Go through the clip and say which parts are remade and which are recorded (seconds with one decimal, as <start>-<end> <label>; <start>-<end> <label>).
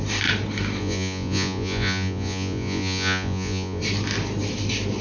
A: 0.0-0.8 recorded; 0.8-3.8 remade; 3.8-5.0 recorded